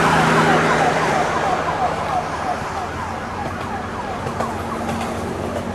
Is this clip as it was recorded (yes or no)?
yes